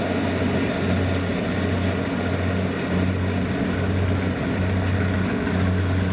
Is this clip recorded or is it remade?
recorded